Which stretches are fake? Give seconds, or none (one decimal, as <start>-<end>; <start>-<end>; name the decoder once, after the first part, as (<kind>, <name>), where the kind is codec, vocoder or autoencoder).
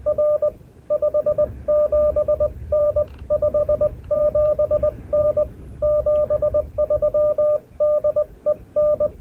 2.6-3.1 (vocoder, Vocos); 3.6-5.6